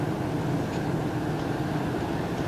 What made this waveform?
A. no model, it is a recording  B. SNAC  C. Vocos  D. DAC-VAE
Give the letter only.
A